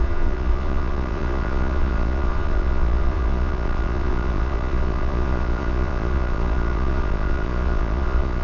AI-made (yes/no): yes